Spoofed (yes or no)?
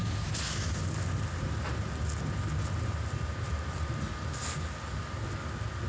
no